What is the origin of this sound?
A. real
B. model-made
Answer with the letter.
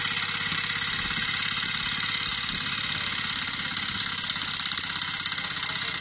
A